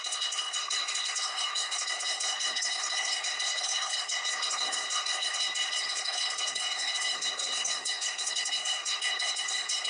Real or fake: fake